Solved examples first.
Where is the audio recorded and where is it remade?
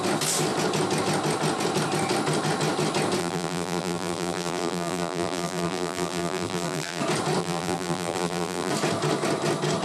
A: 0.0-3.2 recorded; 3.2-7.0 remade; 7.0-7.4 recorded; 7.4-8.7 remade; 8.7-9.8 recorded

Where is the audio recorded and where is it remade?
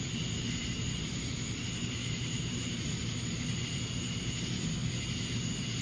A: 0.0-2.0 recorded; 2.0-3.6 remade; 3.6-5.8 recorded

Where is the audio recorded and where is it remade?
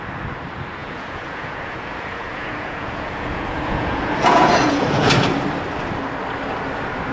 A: 0.0-0.8 recorded; 0.8-5.1 remade; 5.1-7.1 recorded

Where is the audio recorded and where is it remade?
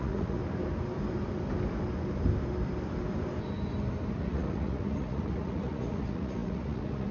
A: 0.0-0.4 remade; 0.4-4.1 recorded; 4.1-7.1 remade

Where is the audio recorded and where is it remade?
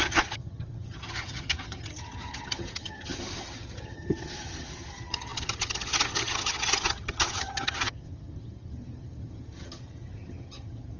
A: 0.0-11.0 remade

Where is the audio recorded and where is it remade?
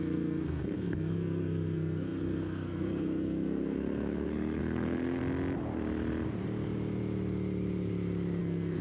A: 0.0-5.2 remade; 5.2-8.4 recorded; 8.4-8.8 remade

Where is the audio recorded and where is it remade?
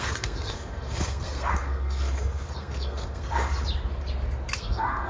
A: 0.0-3.5 remade; 3.5-4.6 recorded; 4.6-5.1 remade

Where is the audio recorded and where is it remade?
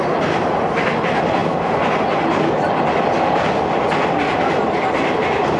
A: 0.0-5.6 recorded